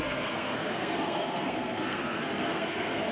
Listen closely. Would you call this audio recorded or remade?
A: remade